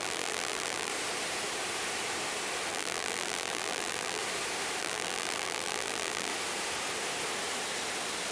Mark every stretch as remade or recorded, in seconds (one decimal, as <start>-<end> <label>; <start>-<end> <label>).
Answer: 0.0-0.9 remade; 0.9-2.7 recorded; 2.7-4.2 remade; 4.2-4.8 recorded; 4.8-6.3 remade; 6.3-8.3 recorded

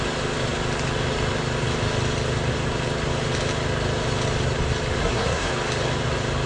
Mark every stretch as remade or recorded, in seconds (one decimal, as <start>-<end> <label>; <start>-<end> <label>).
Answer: 0.0-5.0 recorded; 5.0-5.5 remade; 5.5-6.5 recorded

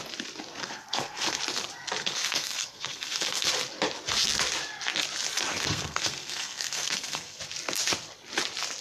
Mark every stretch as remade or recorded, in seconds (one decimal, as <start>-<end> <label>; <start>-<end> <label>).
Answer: 0.0-0.6 recorded; 0.6-1.4 remade; 1.4-2.0 recorded; 2.0-3.5 remade; 3.5-5.5 recorded; 5.5-7.4 remade; 7.4-8.8 recorded

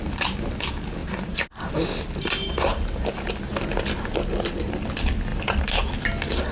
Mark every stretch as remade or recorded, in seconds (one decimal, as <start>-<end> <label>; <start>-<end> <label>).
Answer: 0.0-6.5 recorded

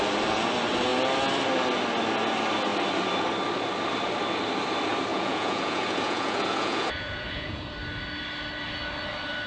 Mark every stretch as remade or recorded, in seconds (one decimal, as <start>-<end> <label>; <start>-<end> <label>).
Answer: 0.0-5.1 recorded; 5.1-7.7 remade; 7.7-9.5 recorded

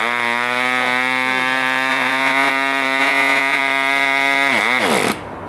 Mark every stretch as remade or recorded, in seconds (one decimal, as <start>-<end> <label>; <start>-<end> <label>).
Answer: 0.0-1.9 recorded; 1.9-2.5 remade; 2.5-3.0 recorded; 3.0-3.6 remade; 3.6-5.5 recorded

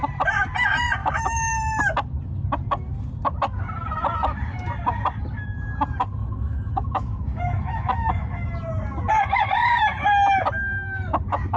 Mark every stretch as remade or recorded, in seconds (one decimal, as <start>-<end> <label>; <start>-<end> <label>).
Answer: 0.0-1.0 recorded; 1.0-1.8 remade; 1.8-6.2 recorded; 6.2-8.1 remade; 8.1-11.6 recorded

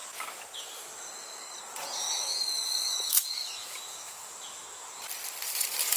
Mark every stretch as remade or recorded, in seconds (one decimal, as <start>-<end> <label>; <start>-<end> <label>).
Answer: 0.0-1.6 remade; 1.6-2.0 recorded; 2.0-4.9 remade; 4.9-6.0 recorded